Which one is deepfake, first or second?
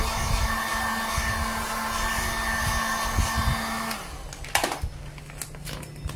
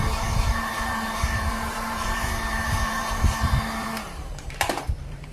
second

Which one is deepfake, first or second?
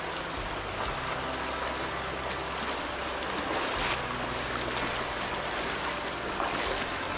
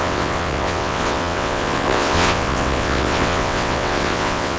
second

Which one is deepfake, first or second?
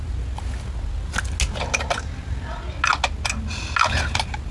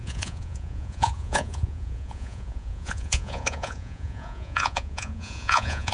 second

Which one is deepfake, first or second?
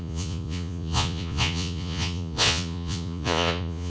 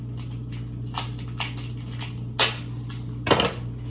first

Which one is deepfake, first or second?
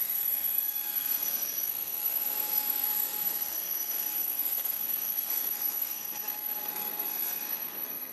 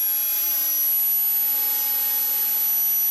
first